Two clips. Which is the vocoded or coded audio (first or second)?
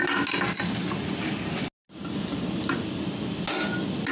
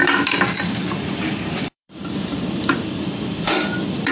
second